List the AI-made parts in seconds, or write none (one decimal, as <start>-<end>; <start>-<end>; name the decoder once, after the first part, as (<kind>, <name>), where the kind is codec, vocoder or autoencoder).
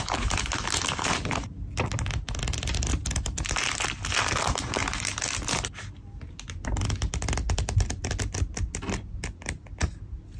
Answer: none